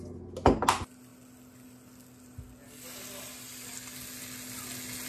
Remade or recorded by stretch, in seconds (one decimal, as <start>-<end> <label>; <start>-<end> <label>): 0.0-5.1 recorded